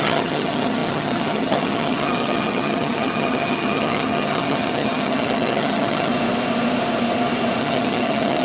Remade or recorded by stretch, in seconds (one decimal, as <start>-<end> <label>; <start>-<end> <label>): 0.0-6.1 remade; 6.1-7.6 recorded; 7.6-8.4 remade